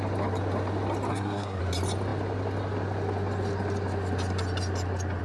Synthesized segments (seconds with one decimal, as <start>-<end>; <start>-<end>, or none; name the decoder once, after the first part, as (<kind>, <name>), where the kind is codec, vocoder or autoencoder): 1.1-1.6 (codec, SNAC)